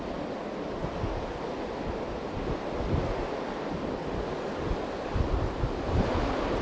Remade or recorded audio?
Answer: recorded